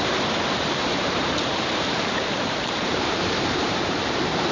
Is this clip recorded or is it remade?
remade